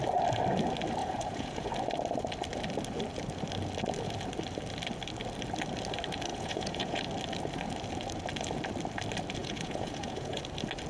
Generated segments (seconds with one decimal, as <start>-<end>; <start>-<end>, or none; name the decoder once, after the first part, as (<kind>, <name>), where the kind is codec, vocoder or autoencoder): 1.0-1.7 (vocoder, Vocos); 6.3-7.0; 9.4-10.4